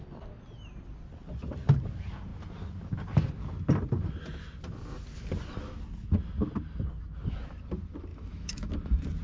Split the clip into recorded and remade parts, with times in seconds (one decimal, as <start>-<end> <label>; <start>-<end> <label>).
0.0-8.1 recorded; 8.1-8.7 remade; 8.7-9.2 recorded